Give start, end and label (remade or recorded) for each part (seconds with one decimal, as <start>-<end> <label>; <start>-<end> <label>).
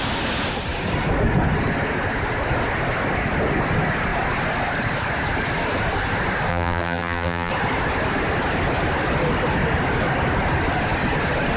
0.0-6.5 recorded; 6.5-7.5 remade; 7.5-11.6 recorded